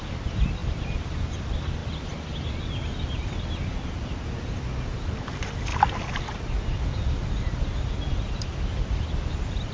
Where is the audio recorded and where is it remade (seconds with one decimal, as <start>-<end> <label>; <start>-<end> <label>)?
0.0-1.8 recorded; 1.8-2.4 remade; 2.4-5.7 recorded; 5.7-9.7 remade